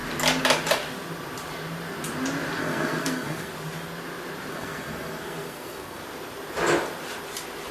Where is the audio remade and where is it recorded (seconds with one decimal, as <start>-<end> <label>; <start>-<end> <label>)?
0.0-2.6 recorded; 2.6-3.5 remade; 3.5-4.5 recorded; 4.5-6.0 remade; 6.0-7.7 recorded